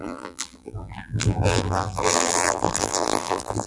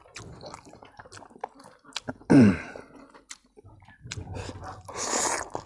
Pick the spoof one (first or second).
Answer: first